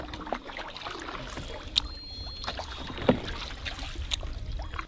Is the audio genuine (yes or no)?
yes